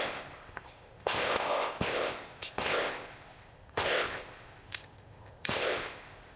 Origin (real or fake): fake